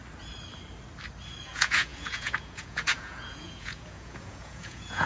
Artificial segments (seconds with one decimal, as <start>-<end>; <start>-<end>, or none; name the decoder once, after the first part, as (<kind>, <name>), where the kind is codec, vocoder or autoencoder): 1.4-5.1 (vocoder, Vocos)